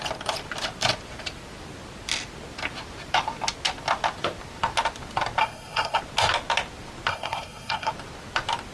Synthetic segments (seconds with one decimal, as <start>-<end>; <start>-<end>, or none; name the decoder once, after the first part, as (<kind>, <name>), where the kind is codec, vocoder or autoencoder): 5.4-6.0 (codec, SNAC); 7.1-7.9